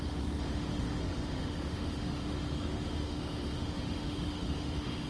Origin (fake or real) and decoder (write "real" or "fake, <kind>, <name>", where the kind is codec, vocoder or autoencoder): fake, autoencoder, DAC-VAE